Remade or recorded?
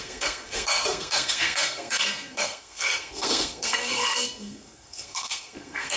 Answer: remade